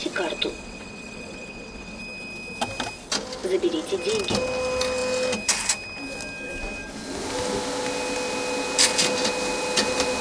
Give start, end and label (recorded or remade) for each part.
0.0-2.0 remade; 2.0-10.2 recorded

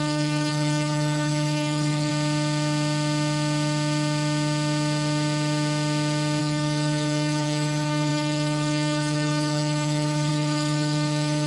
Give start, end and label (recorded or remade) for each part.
0.0-2.1 remade; 2.1-6.4 recorded; 6.4-11.5 remade

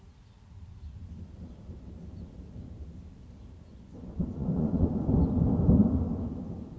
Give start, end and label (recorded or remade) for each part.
0.0-3.7 recorded; 3.7-4.9 remade; 4.9-6.8 recorded

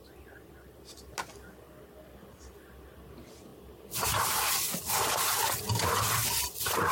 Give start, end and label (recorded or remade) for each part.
0.0-6.9 recorded

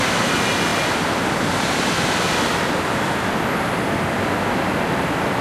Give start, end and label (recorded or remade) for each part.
0.0-5.4 recorded

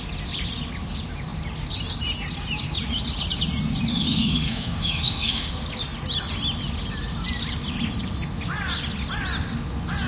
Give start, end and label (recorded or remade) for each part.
0.0-3.9 recorded; 3.9-5.5 remade; 5.5-10.1 recorded